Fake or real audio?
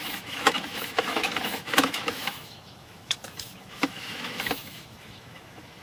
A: fake